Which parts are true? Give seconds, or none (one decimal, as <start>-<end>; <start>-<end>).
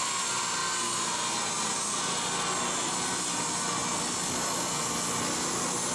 0.0-5.9